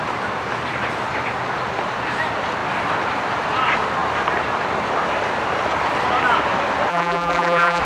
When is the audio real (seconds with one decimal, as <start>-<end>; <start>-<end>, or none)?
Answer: 0.0-6.9

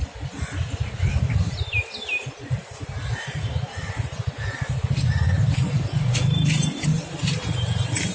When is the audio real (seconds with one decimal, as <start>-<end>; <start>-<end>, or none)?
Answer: none

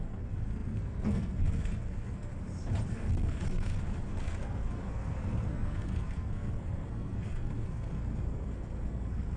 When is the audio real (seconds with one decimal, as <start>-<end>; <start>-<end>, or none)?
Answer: 2.3-2.9

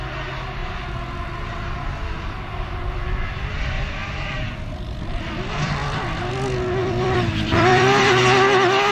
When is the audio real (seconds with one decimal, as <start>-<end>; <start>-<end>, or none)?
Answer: 0.0-4.0; 5.2-6.8; 8.2-8.9

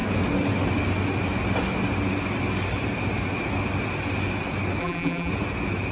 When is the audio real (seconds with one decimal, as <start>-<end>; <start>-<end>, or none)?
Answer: 0.0-4.8; 5.3-5.9

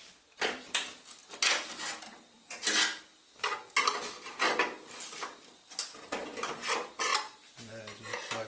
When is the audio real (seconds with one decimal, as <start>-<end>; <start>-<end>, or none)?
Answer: 1.2-6.0; 7.1-8.5

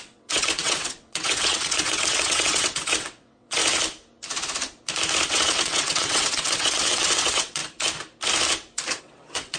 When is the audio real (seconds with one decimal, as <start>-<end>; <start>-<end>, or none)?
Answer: 3.6-5.3; 7.6-9.0